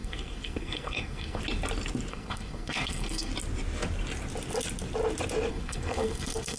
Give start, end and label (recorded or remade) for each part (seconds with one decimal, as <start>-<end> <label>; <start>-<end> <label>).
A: 0.0-1.4 remade; 1.4-2.1 recorded; 2.1-3.3 remade; 3.3-5.5 recorded; 5.5-6.6 remade